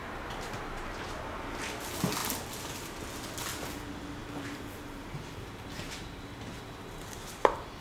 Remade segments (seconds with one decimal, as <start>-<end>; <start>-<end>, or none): 0.0-0.9; 4.2-6.2